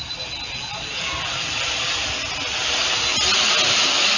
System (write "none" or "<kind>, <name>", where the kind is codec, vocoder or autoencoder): none